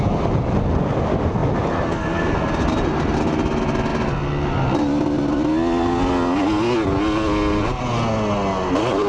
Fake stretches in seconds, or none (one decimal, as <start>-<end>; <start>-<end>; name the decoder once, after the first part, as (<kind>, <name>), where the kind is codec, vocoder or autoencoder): none